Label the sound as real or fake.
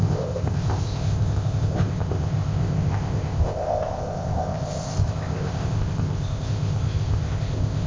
fake